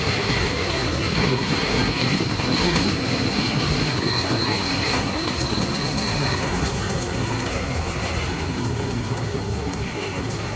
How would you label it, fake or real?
fake